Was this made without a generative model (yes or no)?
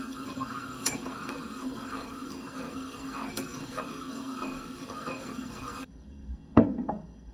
no